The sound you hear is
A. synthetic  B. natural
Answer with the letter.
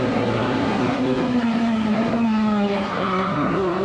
A